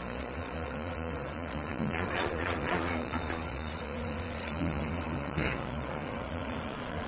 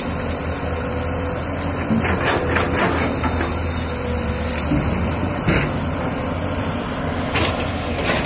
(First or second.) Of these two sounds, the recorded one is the second